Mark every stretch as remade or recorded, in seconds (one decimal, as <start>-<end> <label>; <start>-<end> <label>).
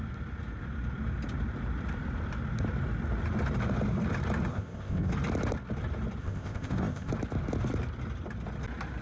0.0-4.5 recorded; 4.5-5.1 remade; 5.1-6.2 recorded; 6.2-7.1 remade; 7.1-9.0 recorded